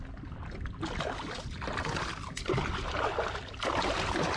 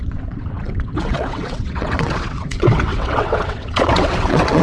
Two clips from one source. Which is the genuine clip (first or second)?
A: first